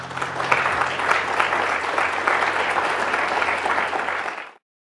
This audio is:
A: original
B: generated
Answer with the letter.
A